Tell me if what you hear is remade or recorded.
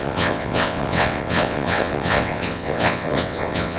remade